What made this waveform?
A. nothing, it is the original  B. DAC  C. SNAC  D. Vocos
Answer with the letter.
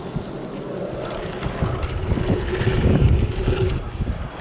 A